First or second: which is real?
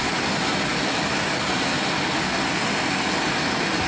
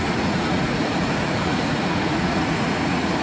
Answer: first